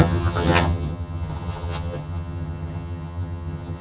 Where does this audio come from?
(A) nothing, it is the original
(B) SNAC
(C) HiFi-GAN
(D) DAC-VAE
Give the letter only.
C